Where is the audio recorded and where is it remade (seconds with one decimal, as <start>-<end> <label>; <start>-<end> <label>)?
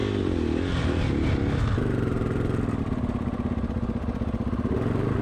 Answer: 0.0-5.2 recorded